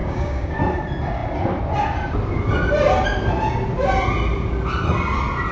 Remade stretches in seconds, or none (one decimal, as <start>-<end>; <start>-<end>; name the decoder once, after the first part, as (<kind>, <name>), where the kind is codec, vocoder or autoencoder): 0.0-0.6 (codec, DAC)